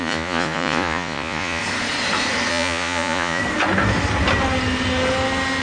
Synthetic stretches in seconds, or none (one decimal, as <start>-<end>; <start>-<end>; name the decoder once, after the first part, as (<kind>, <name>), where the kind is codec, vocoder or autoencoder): 0.0-1.6 (vocoder, Vocos); 2.5-3.4